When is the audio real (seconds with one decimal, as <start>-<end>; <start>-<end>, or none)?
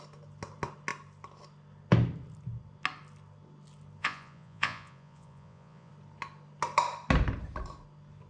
0.0-4.0; 5.9-8.3